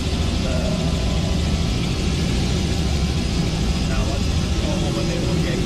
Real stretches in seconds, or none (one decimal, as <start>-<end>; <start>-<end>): none